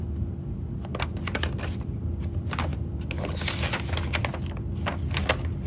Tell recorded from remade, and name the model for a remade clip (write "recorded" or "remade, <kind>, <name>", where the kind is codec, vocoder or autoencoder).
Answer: recorded